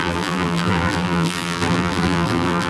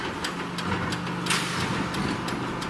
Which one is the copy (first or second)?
first